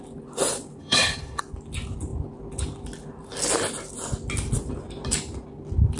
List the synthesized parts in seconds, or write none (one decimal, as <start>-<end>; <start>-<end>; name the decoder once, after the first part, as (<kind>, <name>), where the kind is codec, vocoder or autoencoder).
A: 0.8-1.4 (codec, HILCodec)